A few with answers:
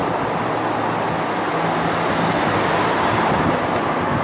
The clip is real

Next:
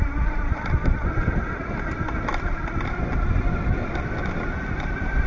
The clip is real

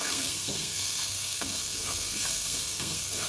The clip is fake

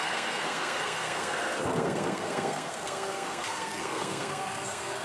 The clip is fake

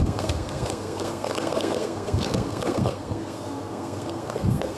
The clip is fake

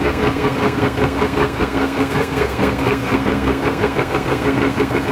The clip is fake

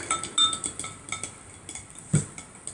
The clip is real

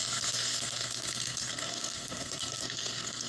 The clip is fake